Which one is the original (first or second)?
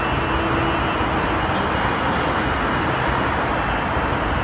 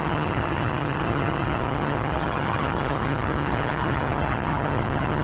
first